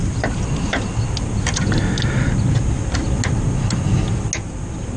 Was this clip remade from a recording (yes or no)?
no